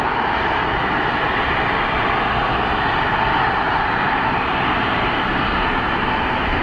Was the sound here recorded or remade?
recorded